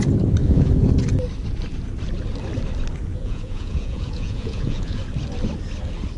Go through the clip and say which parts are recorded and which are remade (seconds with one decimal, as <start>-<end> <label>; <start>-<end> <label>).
0.0-0.4 recorded; 0.4-0.9 remade; 0.9-3.1 recorded; 3.1-5.0 remade; 5.0-6.2 recorded